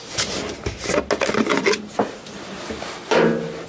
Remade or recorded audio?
recorded